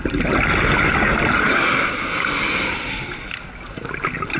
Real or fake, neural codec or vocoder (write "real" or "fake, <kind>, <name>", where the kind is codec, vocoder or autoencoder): real